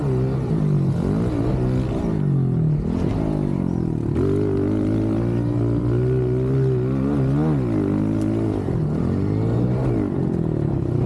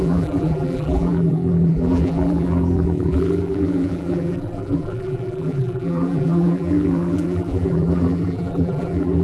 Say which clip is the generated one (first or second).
second